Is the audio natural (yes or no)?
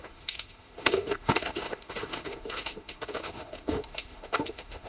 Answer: no